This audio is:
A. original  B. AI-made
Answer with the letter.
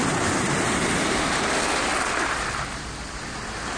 A